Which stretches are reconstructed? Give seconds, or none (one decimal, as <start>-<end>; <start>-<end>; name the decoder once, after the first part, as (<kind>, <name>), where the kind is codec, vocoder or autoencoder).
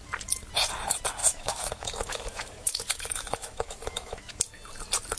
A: 1.2-4.3 (autoencoder, DAC-VAE)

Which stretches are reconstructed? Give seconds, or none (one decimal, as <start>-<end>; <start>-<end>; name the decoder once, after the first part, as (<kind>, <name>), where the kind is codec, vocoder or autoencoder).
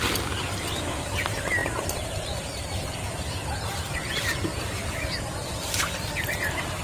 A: none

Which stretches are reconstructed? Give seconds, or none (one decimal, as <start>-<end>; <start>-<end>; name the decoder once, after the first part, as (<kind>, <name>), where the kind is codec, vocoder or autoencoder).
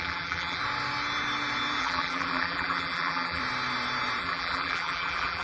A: 0.0-0.6 (vocoder, BigVGAN v2); 1.8-3.4; 4.2-5.4